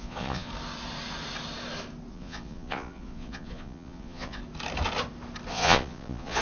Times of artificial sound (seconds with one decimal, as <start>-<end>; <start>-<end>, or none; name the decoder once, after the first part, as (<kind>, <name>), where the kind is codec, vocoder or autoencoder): 0.0-0.5 (vocoder, Vocos); 2.1-4.4; 5.5-6.4

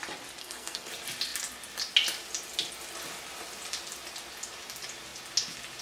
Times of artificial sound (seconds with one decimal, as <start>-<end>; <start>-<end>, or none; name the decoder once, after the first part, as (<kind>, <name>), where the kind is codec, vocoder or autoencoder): 0.4-0.9 (codec, SNAC)

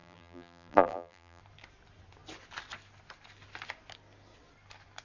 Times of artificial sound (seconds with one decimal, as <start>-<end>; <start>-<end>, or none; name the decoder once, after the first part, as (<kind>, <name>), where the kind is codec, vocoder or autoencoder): 0.0-1.4 (vocoder, BigVGAN v2)

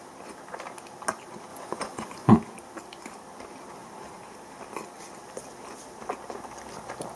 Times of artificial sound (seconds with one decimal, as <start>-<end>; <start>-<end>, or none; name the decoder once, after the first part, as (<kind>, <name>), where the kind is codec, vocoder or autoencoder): 1.5-2.3 (vocoder, Vocos)